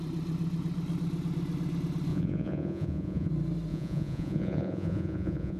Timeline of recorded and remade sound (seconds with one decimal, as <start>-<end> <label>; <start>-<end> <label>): 0.0-2.1 recorded; 2.1-3.3 remade; 3.3-3.7 recorded; 3.7-5.6 remade